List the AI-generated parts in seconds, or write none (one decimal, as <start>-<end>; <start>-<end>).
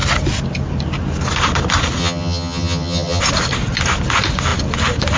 2.0-3.2